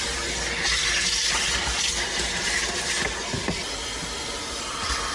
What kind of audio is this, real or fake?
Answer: real